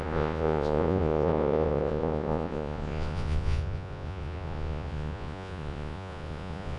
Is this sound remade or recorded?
remade